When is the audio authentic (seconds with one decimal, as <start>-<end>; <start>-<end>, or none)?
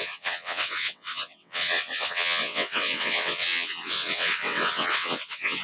none